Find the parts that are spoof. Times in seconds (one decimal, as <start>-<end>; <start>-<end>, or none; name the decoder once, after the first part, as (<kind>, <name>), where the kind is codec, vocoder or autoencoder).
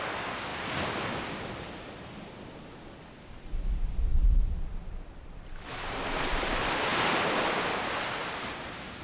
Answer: none